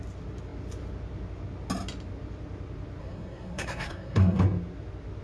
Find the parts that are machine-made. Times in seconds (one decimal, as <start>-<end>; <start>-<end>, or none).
3.0-4.4